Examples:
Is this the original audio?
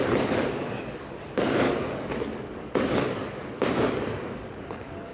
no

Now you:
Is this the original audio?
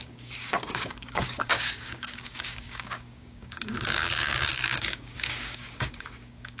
no